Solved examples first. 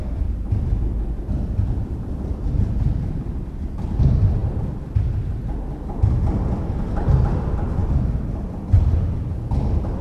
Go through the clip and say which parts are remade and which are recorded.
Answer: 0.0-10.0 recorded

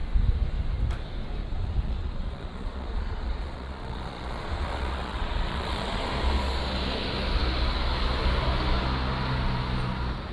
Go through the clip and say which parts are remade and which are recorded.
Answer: 0.0-1.4 recorded; 1.4-6.0 remade; 6.0-10.3 recorded

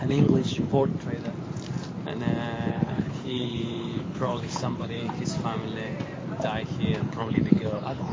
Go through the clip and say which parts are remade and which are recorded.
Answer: 0.0-0.9 remade; 0.9-2.7 recorded; 2.7-5.0 remade; 5.0-7.0 recorded; 7.0-8.1 remade

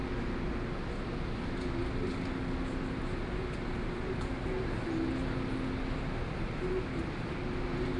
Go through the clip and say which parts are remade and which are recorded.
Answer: 0.0-8.0 recorded

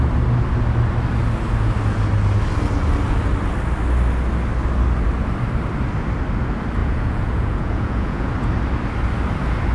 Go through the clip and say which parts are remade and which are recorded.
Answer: 0.0-6.8 recorded; 6.8-8.3 remade; 8.3-9.7 recorded

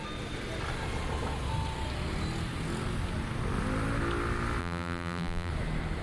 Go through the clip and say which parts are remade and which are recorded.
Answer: 0.0-4.6 recorded; 4.6-5.5 remade; 5.5-6.0 recorded